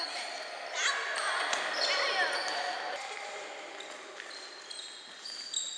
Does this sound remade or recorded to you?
recorded